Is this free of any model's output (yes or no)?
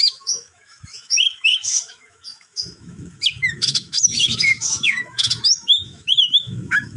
no